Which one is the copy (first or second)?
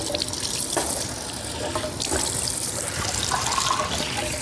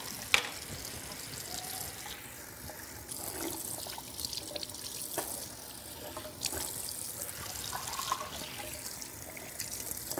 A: first